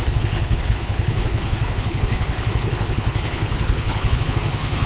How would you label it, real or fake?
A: fake